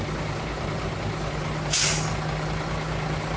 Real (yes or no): yes